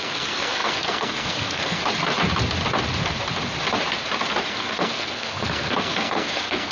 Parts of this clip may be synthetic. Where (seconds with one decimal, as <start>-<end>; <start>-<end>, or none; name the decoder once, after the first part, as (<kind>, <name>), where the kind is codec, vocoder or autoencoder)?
0.0-1.8 (codec, SNAC); 4.5-6.7